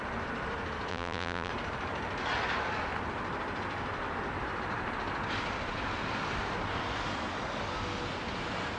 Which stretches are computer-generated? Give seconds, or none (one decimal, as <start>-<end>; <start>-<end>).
0.9-1.5